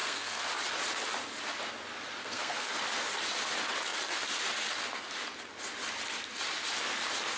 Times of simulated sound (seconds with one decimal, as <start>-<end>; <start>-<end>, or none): 0.0-0.5; 2.2-2.8